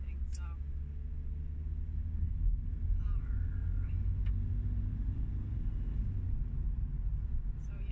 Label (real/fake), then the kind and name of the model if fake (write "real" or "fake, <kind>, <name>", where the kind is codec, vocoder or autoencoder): real